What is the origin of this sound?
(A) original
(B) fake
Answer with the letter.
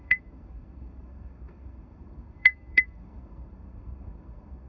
B